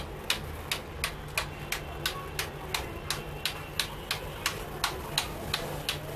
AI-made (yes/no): no